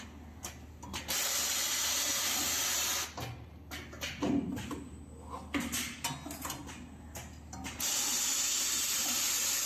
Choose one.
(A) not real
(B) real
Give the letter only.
B